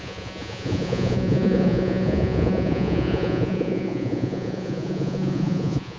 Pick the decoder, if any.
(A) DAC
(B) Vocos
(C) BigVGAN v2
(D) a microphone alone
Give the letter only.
B